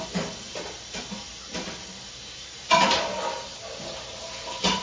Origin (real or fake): real